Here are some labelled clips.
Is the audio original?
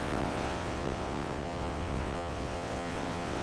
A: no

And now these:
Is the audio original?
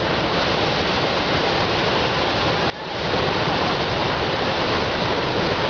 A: yes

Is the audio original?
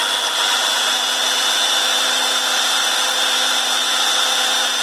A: yes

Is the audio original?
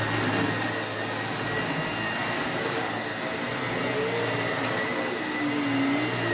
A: yes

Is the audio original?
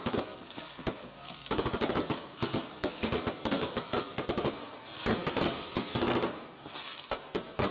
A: no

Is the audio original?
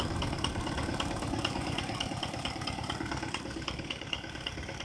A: no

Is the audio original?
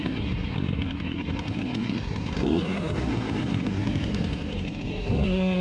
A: no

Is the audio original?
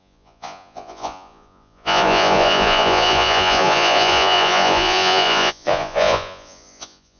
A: no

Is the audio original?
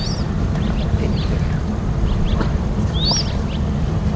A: yes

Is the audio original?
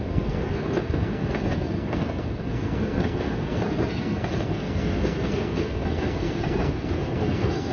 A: no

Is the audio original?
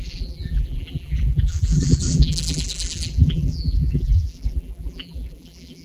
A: no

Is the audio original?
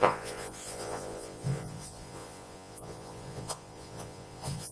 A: no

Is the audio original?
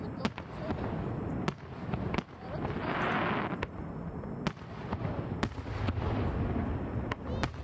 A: yes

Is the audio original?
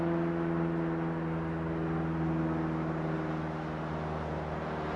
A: yes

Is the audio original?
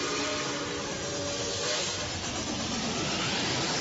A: yes